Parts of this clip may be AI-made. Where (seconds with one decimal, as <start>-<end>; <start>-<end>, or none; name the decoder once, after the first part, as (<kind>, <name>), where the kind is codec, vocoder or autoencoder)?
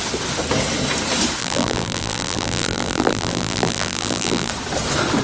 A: 1.4-4.5 (vocoder, BigVGAN v2)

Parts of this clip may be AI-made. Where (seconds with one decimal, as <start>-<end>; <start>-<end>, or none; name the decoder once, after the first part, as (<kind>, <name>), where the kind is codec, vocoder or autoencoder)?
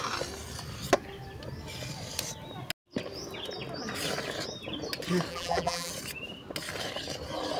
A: 5.3-5.9 (vocoder, BigVGAN v2)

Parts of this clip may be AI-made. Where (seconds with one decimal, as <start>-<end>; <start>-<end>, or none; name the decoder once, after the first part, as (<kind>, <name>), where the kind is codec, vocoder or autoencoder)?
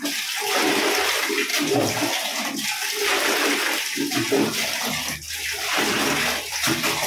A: 1.5-5.8 (vocoder, BigVGAN v2)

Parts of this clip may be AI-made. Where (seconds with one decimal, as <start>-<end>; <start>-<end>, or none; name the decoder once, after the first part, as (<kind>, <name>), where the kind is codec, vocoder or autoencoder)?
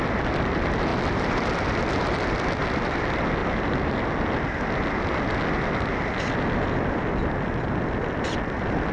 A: 0.9-2.0 (vocoder, BigVGAN v2); 3.4-4.1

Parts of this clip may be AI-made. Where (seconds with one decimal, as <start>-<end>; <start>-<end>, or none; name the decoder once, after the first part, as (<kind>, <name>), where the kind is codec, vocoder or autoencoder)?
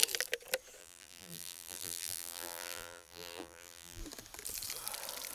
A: 0.8-4.0 (vocoder, BigVGAN v2)